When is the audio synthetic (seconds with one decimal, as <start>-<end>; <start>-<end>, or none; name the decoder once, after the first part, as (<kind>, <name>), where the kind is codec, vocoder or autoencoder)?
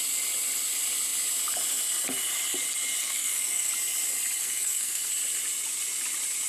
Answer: 3.0-3.7 (codec, SNAC); 4.4-5.1